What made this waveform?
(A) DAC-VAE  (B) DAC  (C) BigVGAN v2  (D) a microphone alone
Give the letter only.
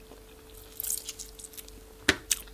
D